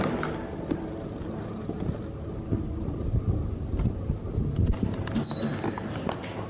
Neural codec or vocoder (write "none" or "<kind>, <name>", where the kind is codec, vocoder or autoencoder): none